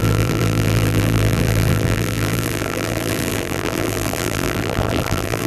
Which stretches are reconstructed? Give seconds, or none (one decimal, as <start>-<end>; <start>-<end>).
0.0-5.5